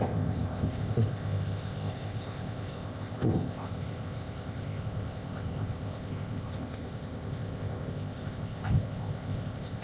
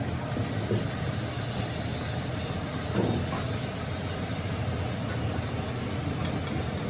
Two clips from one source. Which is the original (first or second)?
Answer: second